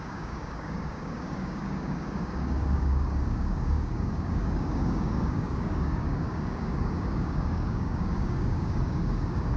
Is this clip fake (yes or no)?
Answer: yes